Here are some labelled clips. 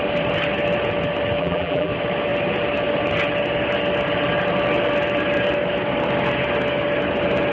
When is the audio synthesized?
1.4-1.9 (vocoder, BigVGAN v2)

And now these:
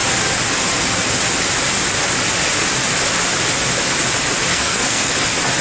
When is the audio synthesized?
4.5-5.1 (codec, SNAC)